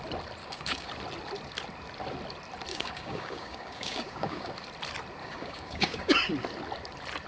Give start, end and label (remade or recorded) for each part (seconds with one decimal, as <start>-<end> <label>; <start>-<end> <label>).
0.0-0.4 recorded; 0.4-0.9 remade; 0.9-2.7 recorded; 2.7-4.5 remade; 4.5-5.2 recorded; 5.2-6.3 remade; 6.3-7.3 recorded